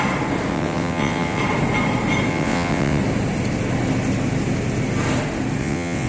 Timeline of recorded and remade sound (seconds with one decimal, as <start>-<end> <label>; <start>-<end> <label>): 0.0-0.5 recorded; 0.5-1.4 remade; 1.4-2.3 recorded; 2.3-3.0 remade; 3.0-5.6 recorded; 5.6-6.1 remade

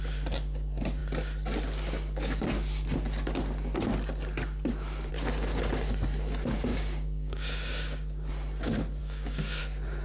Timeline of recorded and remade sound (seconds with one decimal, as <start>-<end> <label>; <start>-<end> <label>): 0.0-6.7 recorded; 6.7-8.3 remade; 8.3-9.0 recorded; 9.0-9.6 remade; 9.6-10.0 recorded

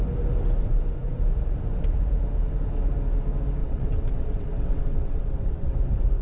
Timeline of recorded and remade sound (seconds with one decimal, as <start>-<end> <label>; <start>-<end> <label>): 0.0-3.6 recorded; 3.6-5.7 remade; 5.7-6.2 recorded

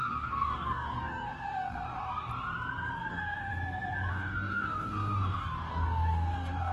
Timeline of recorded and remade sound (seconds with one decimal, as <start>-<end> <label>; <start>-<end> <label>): 0.0-2.3 remade; 2.3-3.1 recorded; 3.1-3.5 remade; 3.5-4.1 recorded; 4.1-6.7 remade

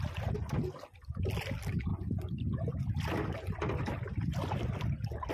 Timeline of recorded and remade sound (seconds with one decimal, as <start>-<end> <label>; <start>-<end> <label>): 0.0-5.3 recorded

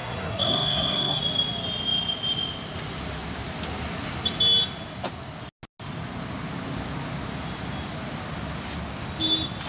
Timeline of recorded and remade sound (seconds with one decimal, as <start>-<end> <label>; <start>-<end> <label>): 0.0-1.2 remade; 1.2-9.7 recorded

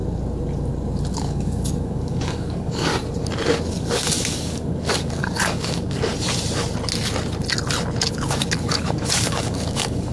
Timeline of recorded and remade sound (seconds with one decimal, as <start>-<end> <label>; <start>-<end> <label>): 0.0-1.1 recorded; 1.1-2.9 remade; 2.9-3.6 recorded; 3.6-6.1 remade; 6.1-8.0 recorded; 8.0-10.1 remade